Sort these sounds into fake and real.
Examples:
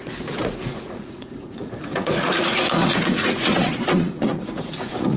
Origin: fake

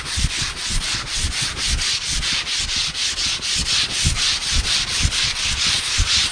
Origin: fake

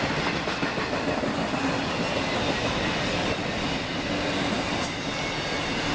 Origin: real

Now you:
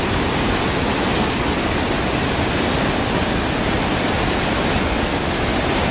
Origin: real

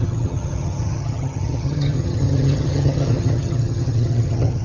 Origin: fake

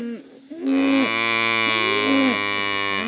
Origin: real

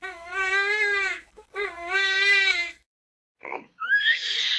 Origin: fake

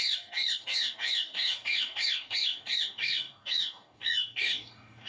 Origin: fake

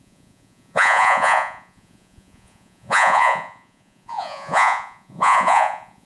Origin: fake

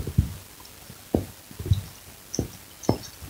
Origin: real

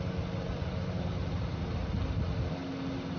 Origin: real